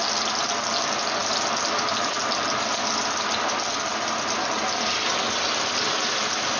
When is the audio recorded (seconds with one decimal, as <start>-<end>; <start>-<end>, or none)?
0.0-6.6